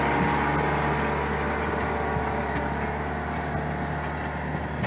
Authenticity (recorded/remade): recorded